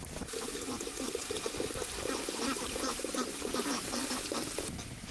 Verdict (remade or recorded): recorded